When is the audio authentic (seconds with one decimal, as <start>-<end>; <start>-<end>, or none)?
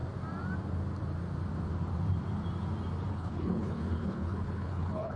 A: 0.0-3.1